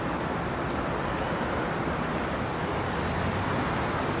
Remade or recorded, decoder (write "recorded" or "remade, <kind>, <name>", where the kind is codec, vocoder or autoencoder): recorded